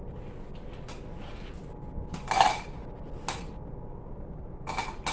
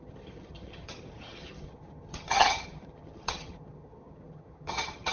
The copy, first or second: second